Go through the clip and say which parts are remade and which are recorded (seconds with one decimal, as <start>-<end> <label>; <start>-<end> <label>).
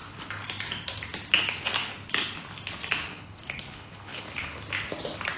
0.0-3.1 recorded; 3.1-4.6 remade; 4.6-5.4 recorded